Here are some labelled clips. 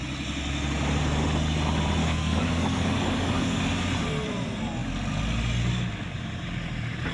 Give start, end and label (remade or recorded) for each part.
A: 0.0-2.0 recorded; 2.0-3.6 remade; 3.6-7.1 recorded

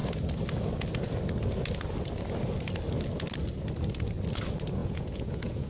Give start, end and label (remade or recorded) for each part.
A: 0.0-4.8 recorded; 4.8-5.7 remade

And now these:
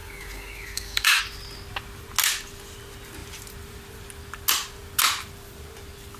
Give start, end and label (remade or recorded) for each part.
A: 0.0-1.2 remade; 1.2-6.2 recorded